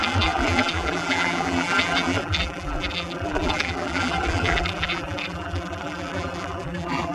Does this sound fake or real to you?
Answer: fake